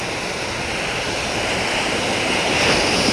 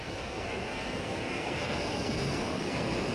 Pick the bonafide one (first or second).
first